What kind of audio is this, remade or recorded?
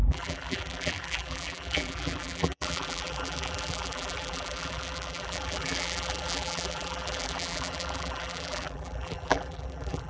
remade